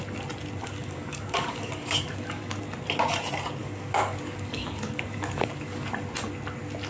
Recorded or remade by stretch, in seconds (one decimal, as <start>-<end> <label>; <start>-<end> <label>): 0.0-0.6 recorded; 0.6-2.6 remade; 2.6-3.6 recorded; 3.6-5.9 remade; 5.9-6.9 recorded